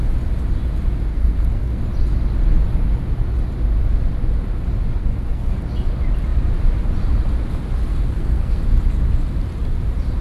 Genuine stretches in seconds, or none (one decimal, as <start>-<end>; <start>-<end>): 0.0-1.1; 1.8-5.0; 5.7-7.9; 8.6-10.2

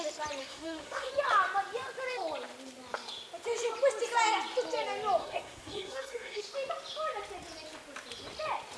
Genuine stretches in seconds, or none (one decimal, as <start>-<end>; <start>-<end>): 0.0-0.4; 1.1-5.2; 6.4-8.8